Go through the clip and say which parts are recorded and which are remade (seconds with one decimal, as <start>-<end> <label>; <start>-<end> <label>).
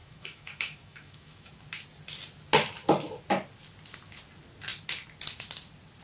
0.0-1.5 remade; 1.5-6.0 recorded